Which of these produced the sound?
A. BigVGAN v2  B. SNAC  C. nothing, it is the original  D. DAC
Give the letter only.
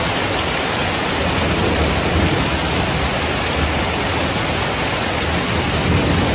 C